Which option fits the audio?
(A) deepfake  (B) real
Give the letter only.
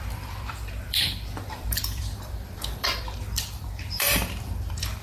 A